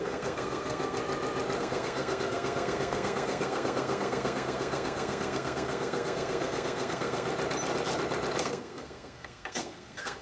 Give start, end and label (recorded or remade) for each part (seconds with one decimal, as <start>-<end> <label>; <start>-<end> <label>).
0.0-1.0 remade; 1.0-1.6 recorded; 1.6-7.3 remade; 7.3-8.4 recorded; 8.4-10.2 remade